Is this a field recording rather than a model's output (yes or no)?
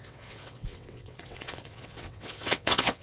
no